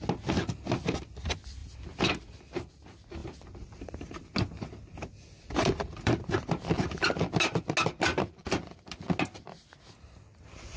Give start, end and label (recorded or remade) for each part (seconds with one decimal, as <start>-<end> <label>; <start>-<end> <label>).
0.0-3.2 recorded; 3.2-6.5 remade; 6.5-8.1 recorded; 8.1-9.0 remade; 9.0-10.8 recorded